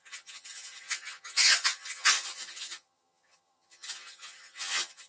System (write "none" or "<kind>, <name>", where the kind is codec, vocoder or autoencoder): vocoder, HiFi-GAN